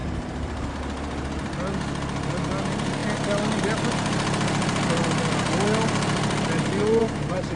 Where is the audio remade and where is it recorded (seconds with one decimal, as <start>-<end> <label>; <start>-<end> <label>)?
0.0-0.7 remade; 0.7-7.0 recorded; 7.0-7.6 remade